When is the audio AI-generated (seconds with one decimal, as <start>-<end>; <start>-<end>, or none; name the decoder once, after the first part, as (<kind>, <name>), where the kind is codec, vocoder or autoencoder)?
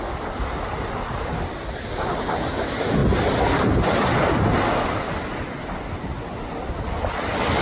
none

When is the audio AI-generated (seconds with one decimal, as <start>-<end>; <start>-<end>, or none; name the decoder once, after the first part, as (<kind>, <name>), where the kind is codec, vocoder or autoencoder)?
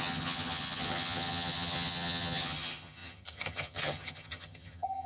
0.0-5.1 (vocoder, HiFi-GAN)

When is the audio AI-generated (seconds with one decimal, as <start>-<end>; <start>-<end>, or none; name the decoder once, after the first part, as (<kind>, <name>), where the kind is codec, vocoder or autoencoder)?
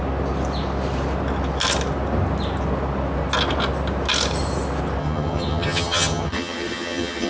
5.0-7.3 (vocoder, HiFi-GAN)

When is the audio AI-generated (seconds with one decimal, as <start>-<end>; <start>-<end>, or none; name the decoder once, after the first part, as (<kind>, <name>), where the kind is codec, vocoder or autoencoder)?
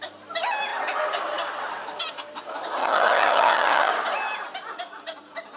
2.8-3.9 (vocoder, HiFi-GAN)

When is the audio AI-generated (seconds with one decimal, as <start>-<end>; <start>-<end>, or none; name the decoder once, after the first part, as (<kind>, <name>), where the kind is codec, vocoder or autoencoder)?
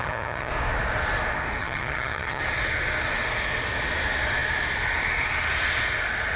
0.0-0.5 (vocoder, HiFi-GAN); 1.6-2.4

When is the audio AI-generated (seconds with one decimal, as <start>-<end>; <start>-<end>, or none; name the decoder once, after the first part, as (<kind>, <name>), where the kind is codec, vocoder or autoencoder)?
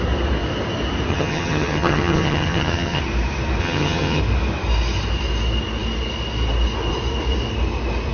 1.1-3.0 (vocoder, HiFi-GAN); 3.6-4.2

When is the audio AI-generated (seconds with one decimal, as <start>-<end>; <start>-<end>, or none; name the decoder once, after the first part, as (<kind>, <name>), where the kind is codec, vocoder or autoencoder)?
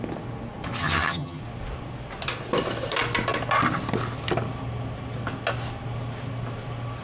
0.8-1.4 (vocoder, HiFi-GAN)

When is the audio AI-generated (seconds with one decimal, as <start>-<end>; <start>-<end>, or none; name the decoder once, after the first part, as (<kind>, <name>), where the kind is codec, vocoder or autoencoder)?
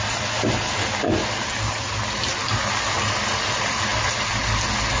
none